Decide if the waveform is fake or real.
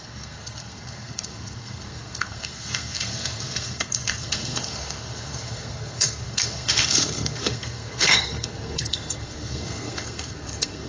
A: fake